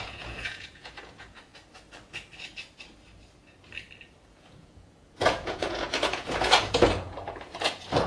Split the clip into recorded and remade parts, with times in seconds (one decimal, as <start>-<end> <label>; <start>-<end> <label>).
0.0-1.5 remade; 1.5-4.3 recorded; 4.3-8.1 remade